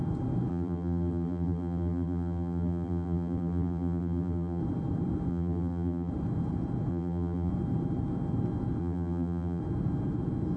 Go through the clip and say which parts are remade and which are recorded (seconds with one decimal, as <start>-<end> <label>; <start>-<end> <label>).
0.0-0.5 recorded; 0.5-4.6 remade; 4.6-5.3 recorded; 5.3-6.1 remade; 6.1-6.9 recorded; 6.9-7.5 remade; 7.5-8.8 recorded; 8.8-9.6 remade; 9.6-10.6 recorded